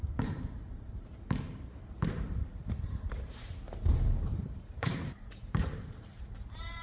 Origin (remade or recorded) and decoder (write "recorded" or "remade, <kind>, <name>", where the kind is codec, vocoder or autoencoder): remade, vocoder, BigVGAN v2